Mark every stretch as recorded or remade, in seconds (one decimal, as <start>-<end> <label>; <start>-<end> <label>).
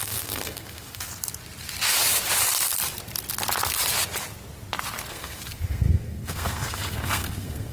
0.0-1.1 remade; 1.1-5.1 recorded; 5.1-7.7 remade